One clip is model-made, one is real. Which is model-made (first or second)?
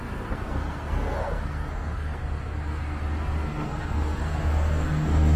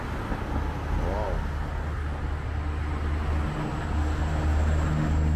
first